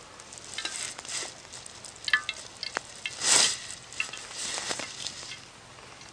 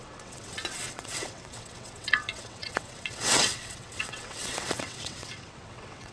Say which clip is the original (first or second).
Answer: first